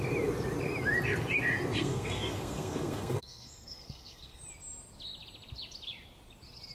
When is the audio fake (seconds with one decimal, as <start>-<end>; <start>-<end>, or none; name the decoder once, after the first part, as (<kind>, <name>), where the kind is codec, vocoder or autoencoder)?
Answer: 1.8-4.4 (codec, SNAC)